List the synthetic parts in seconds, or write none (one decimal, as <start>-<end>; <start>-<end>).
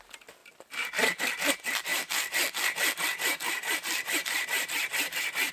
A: none